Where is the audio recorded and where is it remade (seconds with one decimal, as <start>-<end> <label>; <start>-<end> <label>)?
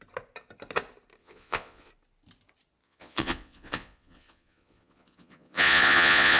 0.0-1.2 recorded; 1.2-1.9 remade; 1.9-2.8 recorded; 2.8-6.4 remade